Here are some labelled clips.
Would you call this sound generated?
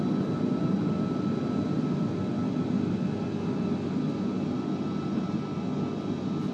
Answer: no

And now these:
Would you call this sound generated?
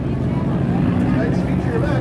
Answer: no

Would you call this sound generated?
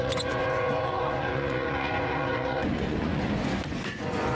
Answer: yes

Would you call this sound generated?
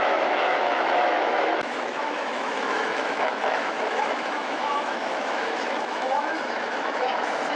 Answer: yes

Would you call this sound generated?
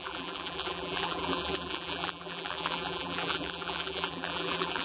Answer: yes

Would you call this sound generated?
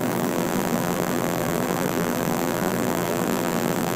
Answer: yes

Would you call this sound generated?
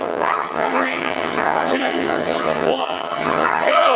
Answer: yes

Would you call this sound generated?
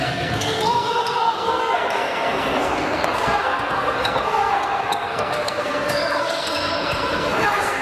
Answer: yes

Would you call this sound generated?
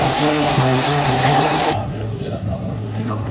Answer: yes